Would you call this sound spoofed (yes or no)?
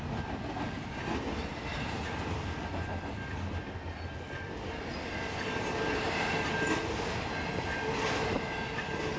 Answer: no